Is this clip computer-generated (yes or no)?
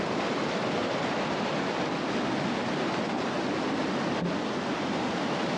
no